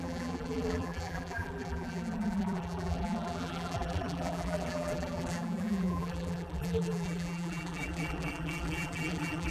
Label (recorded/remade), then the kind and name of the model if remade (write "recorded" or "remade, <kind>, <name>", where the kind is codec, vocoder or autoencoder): remade, vocoder, BigVGAN v2